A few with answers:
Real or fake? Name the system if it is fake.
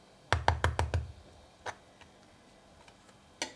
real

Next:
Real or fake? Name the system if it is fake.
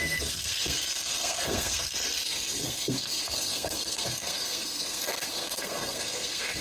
fake, codec, SNAC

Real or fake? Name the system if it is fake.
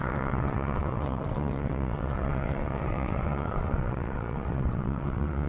fake, vocoder, WaveNeXt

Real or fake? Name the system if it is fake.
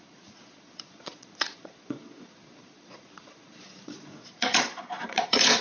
fake, vocoder, Vocos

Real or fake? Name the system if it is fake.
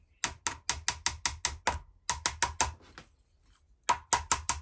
real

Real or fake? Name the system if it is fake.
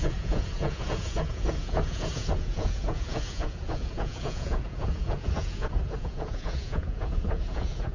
fake, vocoder, Vocos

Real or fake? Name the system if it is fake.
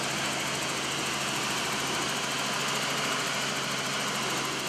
real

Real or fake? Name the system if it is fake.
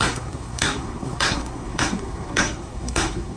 fake, codec, SNAC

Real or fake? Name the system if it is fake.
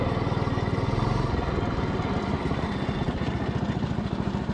real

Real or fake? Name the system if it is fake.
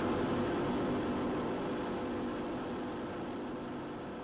real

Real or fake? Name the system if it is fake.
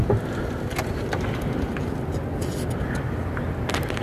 real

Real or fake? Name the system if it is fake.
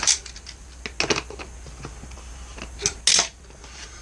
real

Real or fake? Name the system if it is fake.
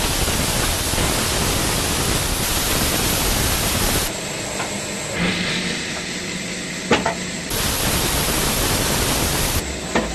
real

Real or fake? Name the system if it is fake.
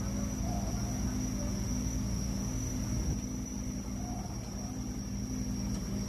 real